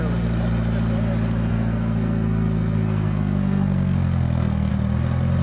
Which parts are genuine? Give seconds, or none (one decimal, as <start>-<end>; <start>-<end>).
0.0-1.5; 4.7-5.4